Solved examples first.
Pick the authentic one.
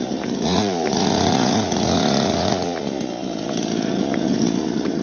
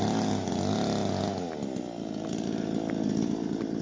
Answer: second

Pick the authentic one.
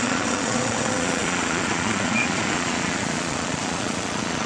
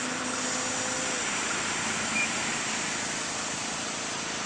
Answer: second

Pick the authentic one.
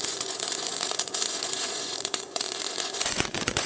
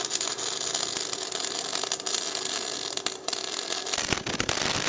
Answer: second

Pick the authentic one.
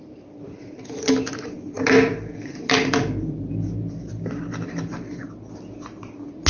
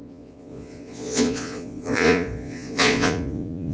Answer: first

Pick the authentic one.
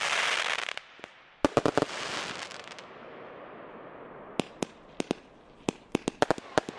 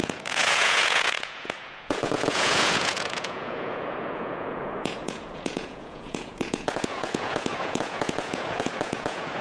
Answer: first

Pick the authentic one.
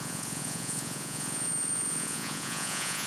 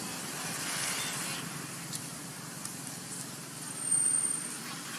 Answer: second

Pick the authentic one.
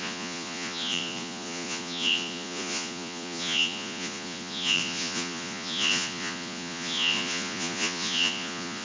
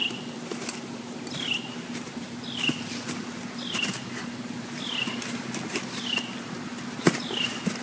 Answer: second